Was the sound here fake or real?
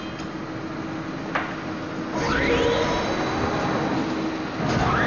real